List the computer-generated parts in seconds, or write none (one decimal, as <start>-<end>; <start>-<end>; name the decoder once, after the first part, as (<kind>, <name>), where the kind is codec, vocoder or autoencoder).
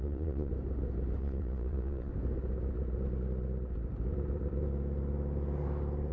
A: 0.0-0.5 (vocoder, Vocos); 1.2-2.1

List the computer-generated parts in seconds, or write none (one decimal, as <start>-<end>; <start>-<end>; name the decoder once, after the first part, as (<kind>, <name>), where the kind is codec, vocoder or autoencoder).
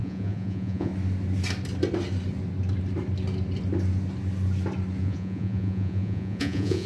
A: 0.0-0.9 (vocoder, Vocos); 5.0-6.9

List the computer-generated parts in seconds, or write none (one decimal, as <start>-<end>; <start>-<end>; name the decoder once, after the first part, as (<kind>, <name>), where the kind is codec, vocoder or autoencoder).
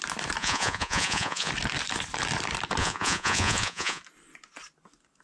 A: 0.4-1.5 (vocoder, Vocos); 2.8-4.0